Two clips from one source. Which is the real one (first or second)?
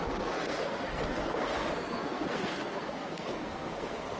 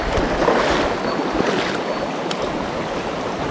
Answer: second